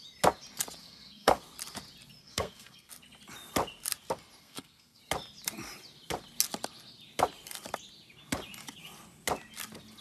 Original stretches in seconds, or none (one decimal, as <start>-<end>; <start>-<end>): 0.0-0.8; 1.4-2.2; 2.9-4.4; 5.0-10.0